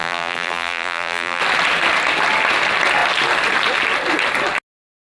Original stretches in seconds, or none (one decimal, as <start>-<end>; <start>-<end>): 1.4-5.0